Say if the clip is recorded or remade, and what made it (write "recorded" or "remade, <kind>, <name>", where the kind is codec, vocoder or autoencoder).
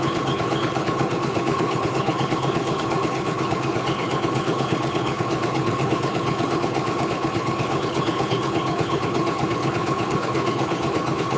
remade, codec, HILCodec